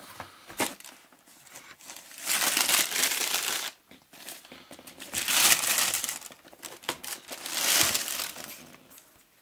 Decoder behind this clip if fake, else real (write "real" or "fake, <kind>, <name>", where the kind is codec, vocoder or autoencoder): real